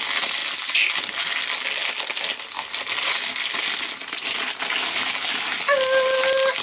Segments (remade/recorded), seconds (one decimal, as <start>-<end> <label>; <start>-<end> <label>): 0.0-6.6 recorded